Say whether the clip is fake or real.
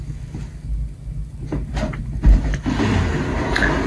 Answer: real